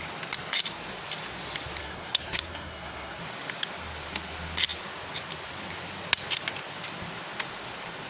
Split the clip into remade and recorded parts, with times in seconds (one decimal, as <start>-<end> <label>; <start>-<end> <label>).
0.0-1.8 recorded; 1.8-3.2 remade; 3.2-8.1 recorded